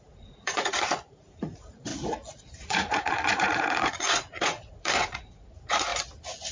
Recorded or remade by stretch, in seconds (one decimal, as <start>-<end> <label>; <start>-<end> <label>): 0.0-1.9 remade; 1.9-2.6 recorded; 2.6-5.9 remade; 5.9-6.5 recorded